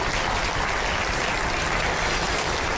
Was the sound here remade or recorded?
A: recorded